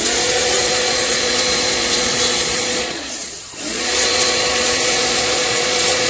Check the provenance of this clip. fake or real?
fake